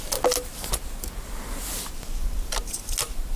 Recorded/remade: recorded